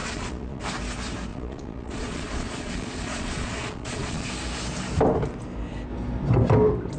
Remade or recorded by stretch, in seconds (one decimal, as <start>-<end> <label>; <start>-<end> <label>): 0.0-0.6 remade; 0.6-1.3 recorded; 1.3-4.3 remade; 4.3-7.0 recorded